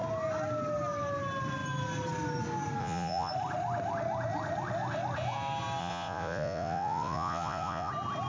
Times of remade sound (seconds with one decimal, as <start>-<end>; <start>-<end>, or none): 2.8-3.3; 5.8-7.9

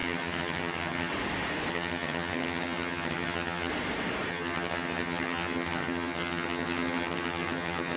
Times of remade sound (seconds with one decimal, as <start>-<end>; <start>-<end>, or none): 0.0-1.1; 1.7-3.7; 4.3-8.0

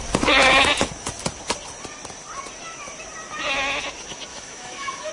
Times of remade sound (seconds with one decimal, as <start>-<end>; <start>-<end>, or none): 4.3-5.1